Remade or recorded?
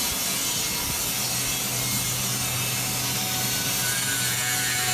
recorded